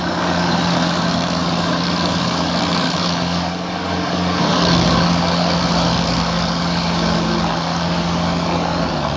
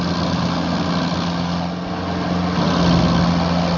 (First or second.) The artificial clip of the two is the first